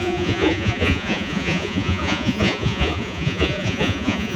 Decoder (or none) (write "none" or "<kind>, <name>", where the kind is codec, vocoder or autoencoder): vocoder, Vocos